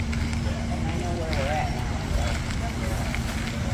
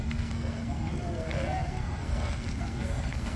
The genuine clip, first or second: first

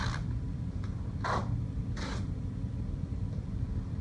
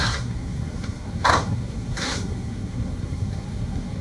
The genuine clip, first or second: first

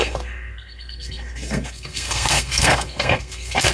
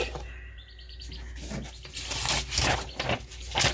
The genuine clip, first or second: second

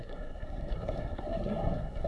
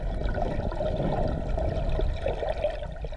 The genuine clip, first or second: second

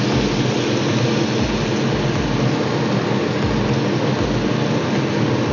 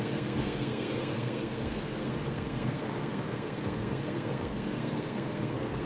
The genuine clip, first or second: first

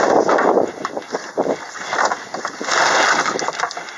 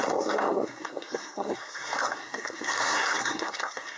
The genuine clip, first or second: first